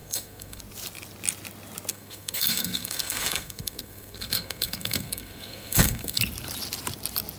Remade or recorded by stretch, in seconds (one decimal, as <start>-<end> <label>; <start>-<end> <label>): 0.0-0.6 remade; 0.6-1.9 recorded; 1.9-6.2 remade; 6.2-7.4 recorded